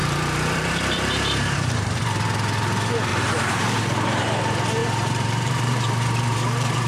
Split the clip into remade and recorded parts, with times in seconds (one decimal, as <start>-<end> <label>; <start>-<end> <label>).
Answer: 0.0-2.0 remade; 2.0-3.1 recorded; 3.1-3.8 remade; 3.8-4.8 recorded; 4.8-6.9 remade